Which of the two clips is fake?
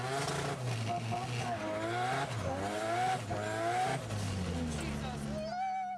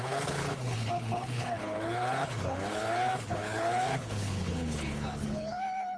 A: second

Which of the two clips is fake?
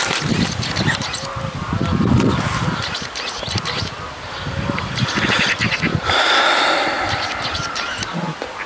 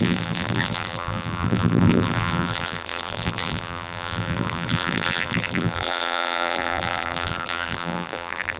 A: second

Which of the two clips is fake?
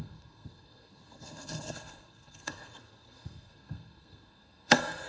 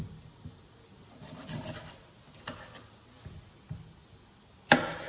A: first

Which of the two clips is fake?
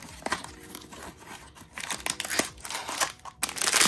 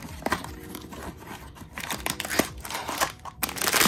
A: second